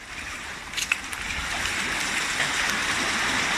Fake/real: real